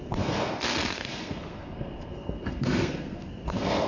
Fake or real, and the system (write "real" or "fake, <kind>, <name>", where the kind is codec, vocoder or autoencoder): fake, codec, SNAC